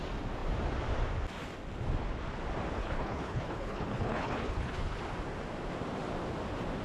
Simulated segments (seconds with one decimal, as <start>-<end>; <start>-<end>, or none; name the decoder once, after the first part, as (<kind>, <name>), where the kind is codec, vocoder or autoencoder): 2.8-5.0 (codec, HILCodec)